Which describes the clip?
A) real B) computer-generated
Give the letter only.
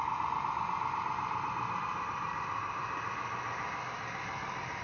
A